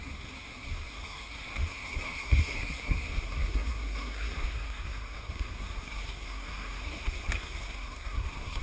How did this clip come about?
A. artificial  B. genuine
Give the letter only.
A